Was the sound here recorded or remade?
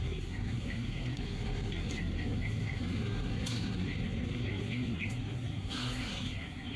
remade